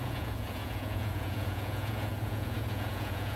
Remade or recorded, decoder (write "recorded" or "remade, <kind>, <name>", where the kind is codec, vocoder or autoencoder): remade, vocoder, Vocos